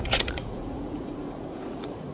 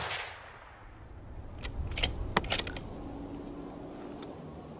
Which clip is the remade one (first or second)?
first